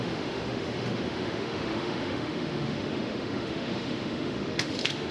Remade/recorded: remade